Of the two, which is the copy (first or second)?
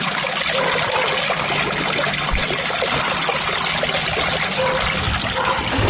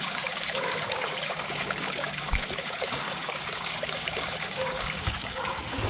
second